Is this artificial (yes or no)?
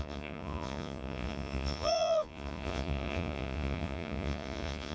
yes